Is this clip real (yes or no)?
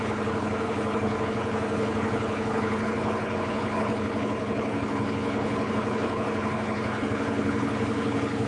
no